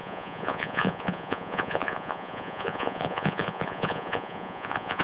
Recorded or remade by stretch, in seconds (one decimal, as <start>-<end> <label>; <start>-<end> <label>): 0.0-5.0 remade